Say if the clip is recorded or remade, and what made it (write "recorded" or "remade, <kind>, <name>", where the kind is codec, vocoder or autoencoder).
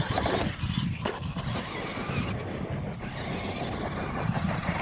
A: recorded